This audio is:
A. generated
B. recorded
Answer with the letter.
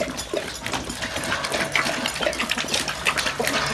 B